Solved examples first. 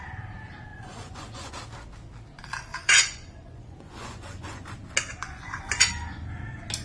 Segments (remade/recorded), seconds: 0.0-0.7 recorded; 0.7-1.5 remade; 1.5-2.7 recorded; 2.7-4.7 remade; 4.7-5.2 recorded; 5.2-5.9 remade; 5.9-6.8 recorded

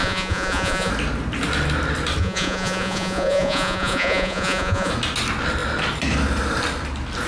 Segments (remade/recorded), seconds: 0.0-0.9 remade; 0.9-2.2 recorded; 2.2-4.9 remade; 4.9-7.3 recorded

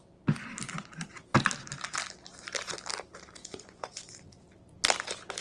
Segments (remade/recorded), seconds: 0.0-3.4 recorded; 3.4-4.1 remade; 4.1-5.4 recorded